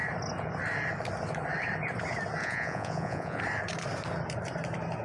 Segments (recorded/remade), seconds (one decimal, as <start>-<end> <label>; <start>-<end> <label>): 0.0-2.4 recorded; 2.4-3.4 remade; 3.4-5.0 recorded